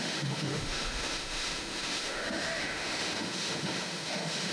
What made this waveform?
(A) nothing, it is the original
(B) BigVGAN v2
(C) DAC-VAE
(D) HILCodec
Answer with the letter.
C